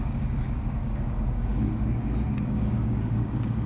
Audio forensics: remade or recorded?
remade